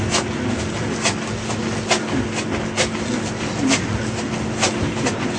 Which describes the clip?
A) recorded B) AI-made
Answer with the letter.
A